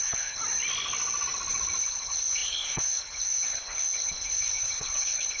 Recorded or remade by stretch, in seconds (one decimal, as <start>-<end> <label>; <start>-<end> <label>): 0.0-0.4 remade; 0.4-1.8 recorded; 1.8-5.4 remade